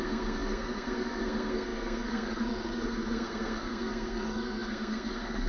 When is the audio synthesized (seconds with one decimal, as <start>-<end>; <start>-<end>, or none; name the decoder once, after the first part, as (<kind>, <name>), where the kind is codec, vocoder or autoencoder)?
0.0-5.5 (codec, SNAC)